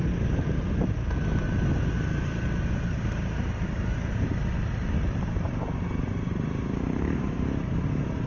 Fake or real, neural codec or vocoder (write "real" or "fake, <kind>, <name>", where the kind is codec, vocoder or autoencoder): real